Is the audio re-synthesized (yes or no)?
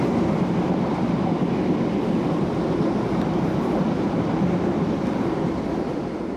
yes